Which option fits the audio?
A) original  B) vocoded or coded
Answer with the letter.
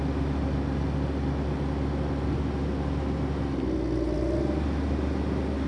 A